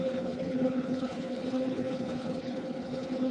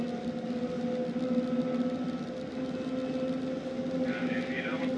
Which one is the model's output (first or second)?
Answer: first